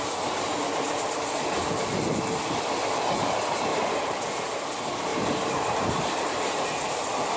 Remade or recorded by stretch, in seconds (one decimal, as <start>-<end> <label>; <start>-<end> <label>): 0.0-3.7 recorded; 3.7-4.6 remade; 4.6-5.1 recorded; 5.1-7.0 remade; 7.0-7.4 recorded